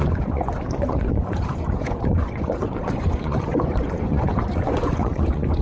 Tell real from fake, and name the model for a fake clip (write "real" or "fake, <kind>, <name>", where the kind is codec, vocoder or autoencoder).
fake, vocoder, Vocos